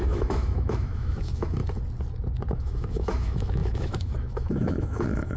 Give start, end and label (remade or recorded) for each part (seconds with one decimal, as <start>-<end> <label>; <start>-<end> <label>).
0.0-1.6 remade; 1.6-2.5 recorded; 2.5-5.4 remade